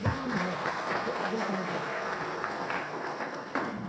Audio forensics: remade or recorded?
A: remade